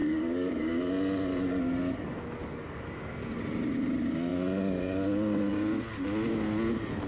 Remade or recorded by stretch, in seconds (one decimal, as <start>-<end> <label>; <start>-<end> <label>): 0.0-0.6 remade; 0.6-2.4 recorded; 2.4-2.9 remade; 2.9-7.1 recorded